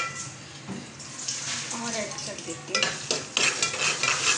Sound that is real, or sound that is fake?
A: real